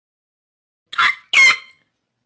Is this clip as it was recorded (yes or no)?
yes